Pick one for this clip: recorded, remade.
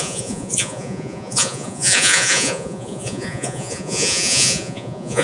remade